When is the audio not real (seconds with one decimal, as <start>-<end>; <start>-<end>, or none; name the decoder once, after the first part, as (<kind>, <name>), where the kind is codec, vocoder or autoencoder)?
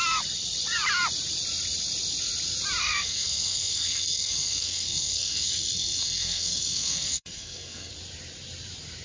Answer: 2.8-7.9 (codec, SNAC)